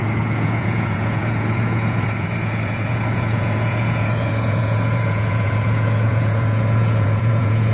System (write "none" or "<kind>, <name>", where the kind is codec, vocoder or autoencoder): vocoder, Vocos